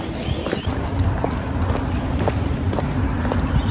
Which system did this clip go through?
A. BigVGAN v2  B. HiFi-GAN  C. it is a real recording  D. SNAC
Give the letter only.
C